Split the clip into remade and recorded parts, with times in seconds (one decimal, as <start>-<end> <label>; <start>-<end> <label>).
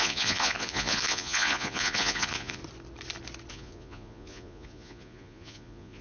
0.0-2.6 remade; 2.6-3.5 recorded; 3.5-6.0 remade